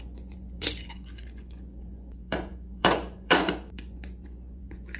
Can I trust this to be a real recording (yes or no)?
no